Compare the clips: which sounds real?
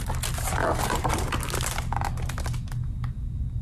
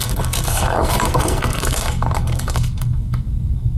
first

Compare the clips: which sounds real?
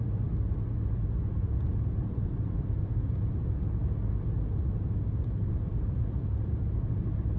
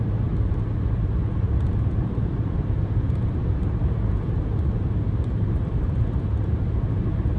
first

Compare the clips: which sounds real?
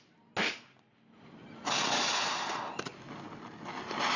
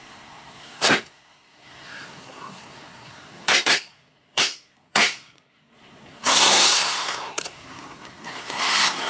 first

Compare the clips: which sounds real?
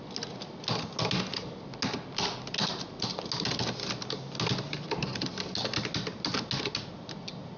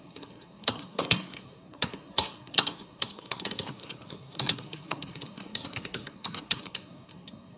first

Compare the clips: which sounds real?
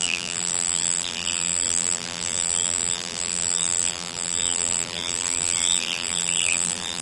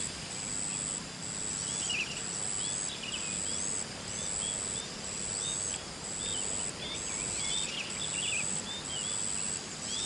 second